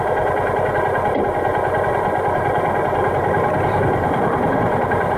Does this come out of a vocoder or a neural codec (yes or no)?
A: no